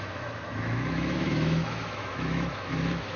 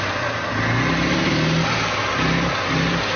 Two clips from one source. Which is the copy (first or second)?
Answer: first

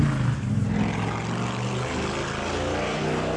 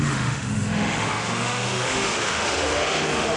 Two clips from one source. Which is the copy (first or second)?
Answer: second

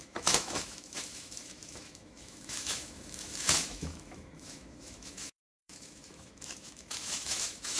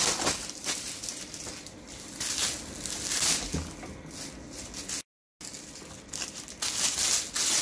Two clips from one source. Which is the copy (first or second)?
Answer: first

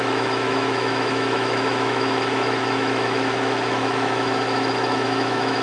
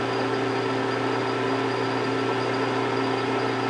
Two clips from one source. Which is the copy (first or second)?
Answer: first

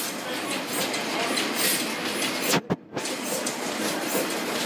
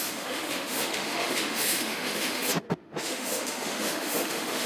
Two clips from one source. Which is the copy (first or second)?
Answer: second